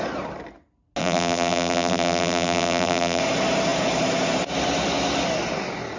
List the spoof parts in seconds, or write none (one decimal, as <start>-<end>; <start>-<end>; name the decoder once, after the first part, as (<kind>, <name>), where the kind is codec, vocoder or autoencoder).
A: 1.0-3.2 (vocoder, BigVGAN v2)